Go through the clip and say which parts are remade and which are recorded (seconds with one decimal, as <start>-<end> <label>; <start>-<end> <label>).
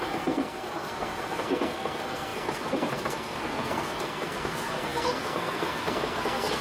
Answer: 0.0-6.6 remade